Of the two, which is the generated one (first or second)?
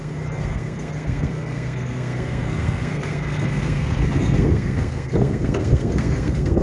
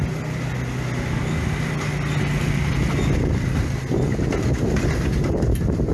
first